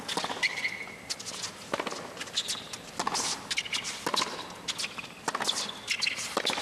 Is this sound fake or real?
real